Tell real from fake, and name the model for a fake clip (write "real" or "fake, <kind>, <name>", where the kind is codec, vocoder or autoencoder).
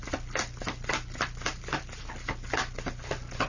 real